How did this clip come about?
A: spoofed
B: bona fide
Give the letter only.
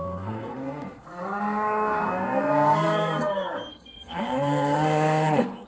A